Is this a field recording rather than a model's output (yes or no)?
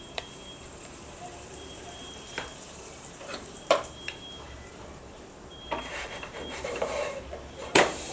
no